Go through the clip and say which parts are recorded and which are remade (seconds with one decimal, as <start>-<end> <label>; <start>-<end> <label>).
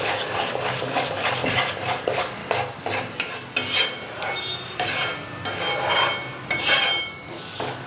0.0-1.4 remade; 1.4-2.0 recorded; 2.0-2.4 remade; 2.4-7.0 recorded; 7.0-7.9 remade